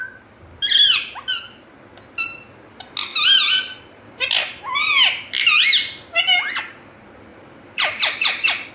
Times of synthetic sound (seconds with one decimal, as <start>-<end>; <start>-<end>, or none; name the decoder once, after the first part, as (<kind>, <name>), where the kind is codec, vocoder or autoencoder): 0.9-1.7 (vocoder, BigVGAN v2); 3.1-4.3; 7.3-8.7

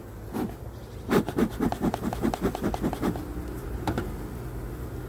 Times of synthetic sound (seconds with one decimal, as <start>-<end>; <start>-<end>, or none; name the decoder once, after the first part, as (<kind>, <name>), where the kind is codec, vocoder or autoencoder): 0.8-2.3 (vocoder, BigVGAN v2); 3.4-4.0

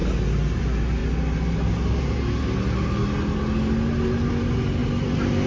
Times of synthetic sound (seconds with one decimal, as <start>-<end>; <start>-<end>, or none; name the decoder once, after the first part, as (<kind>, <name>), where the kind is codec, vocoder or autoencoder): 4.8-5.5 (vocoder, BigVGAN v2)

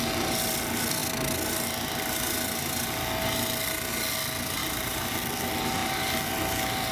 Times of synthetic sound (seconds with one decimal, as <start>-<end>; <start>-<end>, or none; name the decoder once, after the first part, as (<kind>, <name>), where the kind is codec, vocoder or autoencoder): 4.6-5.2 (vocoder, BigVGAN v2)

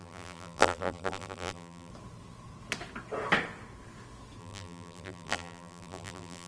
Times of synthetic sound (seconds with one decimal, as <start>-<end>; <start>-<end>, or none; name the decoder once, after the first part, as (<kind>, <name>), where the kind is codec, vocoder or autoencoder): 0.0-1.9 (vocoder, BigVGAN v2); 4.4-6.5

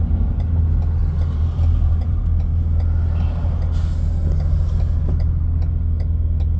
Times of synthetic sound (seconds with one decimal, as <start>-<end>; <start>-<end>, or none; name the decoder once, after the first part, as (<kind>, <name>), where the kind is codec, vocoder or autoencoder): 1.0-2.2 (vocoder, BigVGAN v2)